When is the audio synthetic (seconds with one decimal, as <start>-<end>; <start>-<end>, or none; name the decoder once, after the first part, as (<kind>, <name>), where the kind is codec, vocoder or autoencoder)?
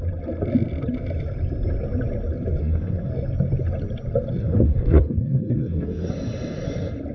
2.6-3.1 (codec, SNAC); 4.4-6.1